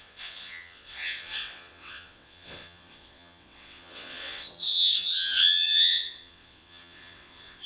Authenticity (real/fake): fake